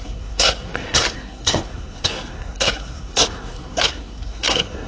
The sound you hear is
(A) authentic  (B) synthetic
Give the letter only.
B